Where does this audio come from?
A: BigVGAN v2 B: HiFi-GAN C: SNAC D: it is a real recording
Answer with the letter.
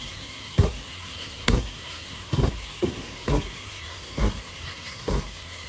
C